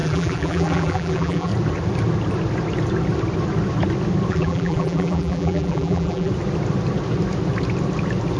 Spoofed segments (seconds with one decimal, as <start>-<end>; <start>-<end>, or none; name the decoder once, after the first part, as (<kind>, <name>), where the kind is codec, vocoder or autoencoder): 0.0-1.5 (vocoder, BigVGAN v2); 4.3-6.3

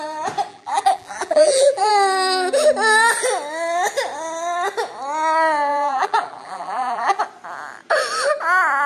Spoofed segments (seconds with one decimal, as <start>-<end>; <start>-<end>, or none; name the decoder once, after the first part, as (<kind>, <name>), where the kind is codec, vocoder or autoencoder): 0.5-1.9 (vocoder, BigVGAN v2); 5.7-7.2